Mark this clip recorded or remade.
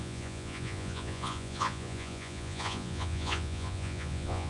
remade